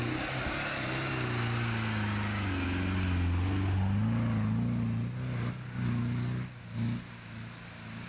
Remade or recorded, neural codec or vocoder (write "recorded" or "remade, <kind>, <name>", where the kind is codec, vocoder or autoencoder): recorded